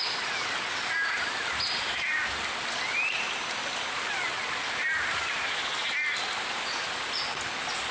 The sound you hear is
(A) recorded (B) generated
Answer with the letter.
A